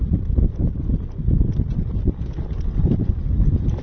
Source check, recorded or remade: recorded